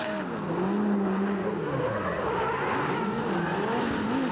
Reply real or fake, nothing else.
real